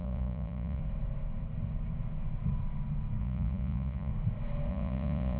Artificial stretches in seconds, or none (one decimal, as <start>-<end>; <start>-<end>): 0.0-0.8; 3.2-4.1; 4.7-5.4